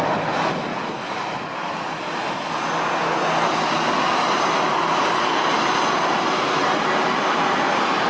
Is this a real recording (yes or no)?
yes